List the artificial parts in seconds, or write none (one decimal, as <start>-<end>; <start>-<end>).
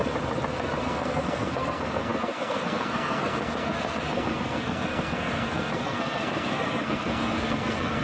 0.8-8.0